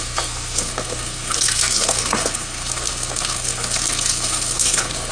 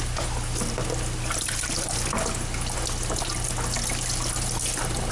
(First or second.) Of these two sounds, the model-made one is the first